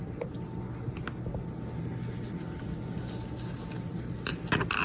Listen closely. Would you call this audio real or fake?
real